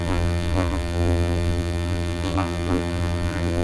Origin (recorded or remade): remade